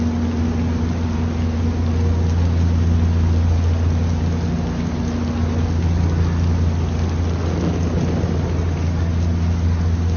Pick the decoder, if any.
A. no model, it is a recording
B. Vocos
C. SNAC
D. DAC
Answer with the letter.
A